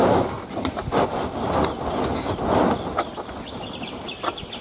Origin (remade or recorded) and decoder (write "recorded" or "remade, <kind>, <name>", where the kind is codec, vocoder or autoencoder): recorded